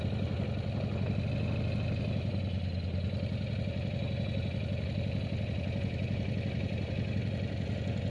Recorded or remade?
recorded